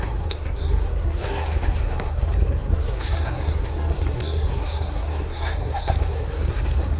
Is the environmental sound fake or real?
fake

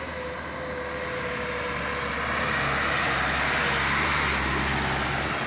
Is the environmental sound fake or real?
real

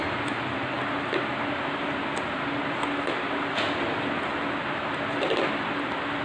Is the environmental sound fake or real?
real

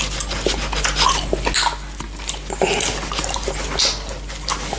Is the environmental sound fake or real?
real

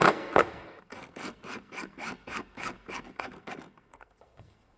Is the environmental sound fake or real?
fake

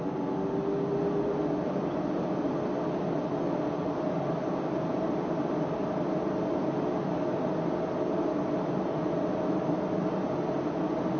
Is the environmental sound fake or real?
real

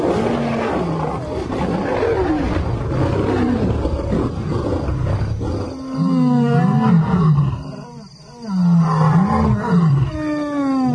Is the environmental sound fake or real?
real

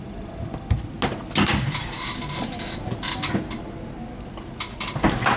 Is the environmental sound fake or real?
real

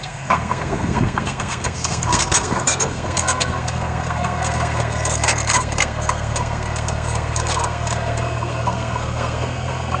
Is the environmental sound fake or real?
fake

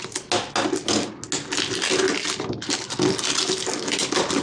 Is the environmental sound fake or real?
real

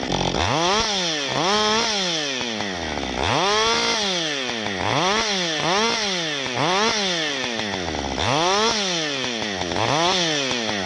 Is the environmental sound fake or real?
real